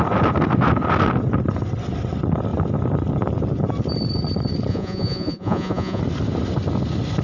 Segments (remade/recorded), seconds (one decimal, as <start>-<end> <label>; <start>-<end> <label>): 0.0-4.7 recorded; 4.7-6.0 remade; 6.0-7.2 recorded